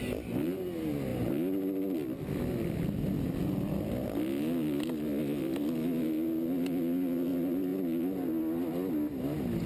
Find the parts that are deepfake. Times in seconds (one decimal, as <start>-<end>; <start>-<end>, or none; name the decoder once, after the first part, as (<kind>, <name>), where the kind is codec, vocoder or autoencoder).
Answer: none